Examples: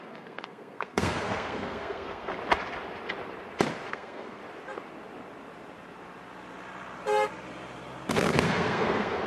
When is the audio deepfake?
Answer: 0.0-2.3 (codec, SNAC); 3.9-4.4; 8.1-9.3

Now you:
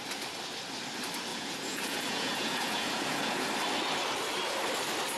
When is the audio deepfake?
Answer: 1.3-3.5 (vocoder, Vocos)

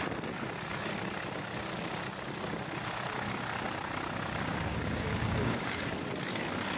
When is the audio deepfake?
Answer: 4.7-5.8 (codec, DAC)

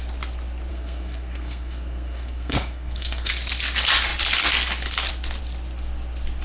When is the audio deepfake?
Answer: 0.7-3.3 (codec, SNAC)

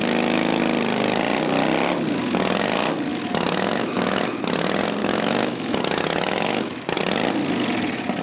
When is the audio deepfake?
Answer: 0.0-0.6 (autoencoder, DAC-VAE); 3.1-4.2; 5.0-7.0